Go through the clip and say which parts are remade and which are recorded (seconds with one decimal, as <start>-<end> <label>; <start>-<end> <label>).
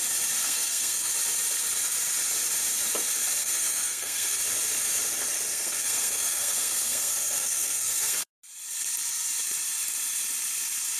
0.0-0.4 recorded; 0.4-1.1 remade; 1.1-3.4 recorded; 3.4-4.4 remade; 4.4-5.5 recorded; 5.5-8.3 remade; 8.3-11.0 recorded